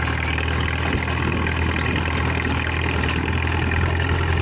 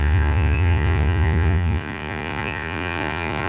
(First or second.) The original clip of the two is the first